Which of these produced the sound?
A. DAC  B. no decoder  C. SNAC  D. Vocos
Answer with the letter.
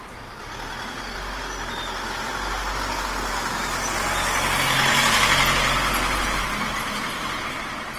B